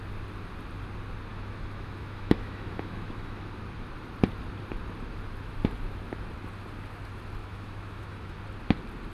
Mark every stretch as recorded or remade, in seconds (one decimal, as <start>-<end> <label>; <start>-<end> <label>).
0.0-1.3 recorded; 1.3-3.5 remade; 3.5-7.4 recorded; 7.4-8.4 remade; 8.4-9.1 recorded